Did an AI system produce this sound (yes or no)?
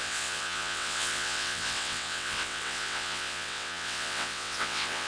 yes